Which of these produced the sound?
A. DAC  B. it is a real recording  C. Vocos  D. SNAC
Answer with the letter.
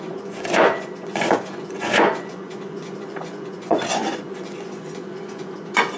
C